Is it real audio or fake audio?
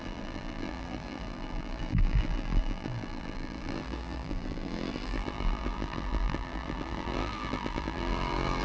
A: fake